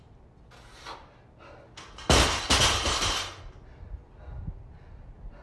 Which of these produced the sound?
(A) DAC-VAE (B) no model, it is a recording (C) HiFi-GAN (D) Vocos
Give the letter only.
B